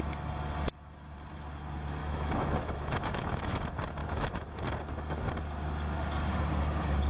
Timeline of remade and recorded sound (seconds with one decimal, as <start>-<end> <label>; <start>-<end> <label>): 0.0-2.0 recorded; 2.0-3.6 remade; 3.6-4.0 recorded; 4.0-4.6 remade; 4.6-7.1 recorded